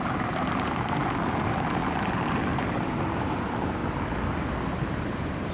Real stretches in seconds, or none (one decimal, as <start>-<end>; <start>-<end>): 0.0-5.5